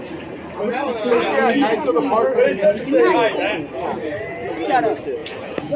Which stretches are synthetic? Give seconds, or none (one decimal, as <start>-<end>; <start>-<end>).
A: 5.2-5.8